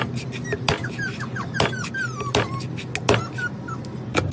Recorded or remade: recorded